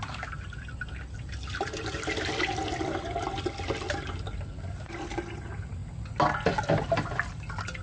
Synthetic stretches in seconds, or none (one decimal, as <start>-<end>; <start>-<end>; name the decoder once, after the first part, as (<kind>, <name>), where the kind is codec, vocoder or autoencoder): none